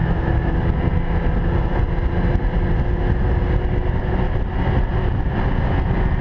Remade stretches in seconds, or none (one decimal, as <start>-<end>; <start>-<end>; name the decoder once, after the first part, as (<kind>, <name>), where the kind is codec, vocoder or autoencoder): 0.0-0.5 (autoencoder, DAC-VAE)